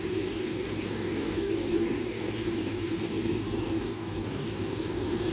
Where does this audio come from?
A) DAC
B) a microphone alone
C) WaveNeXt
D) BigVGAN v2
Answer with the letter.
A